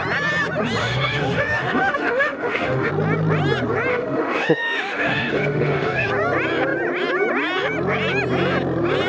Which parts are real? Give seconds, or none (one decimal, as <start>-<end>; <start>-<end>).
0.0-0.8; 2.9-3.9; 6.1-9.1